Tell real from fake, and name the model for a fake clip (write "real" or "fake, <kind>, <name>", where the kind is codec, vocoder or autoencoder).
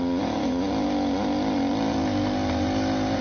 real